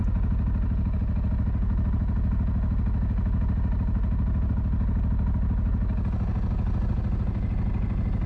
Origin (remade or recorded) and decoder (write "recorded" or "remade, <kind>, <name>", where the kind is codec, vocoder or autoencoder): recorded